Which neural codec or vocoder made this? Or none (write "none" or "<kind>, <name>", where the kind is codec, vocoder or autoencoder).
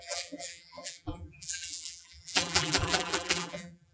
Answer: vocoder, BigVGAN v2